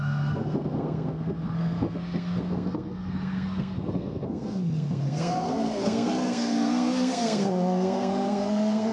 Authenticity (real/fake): fake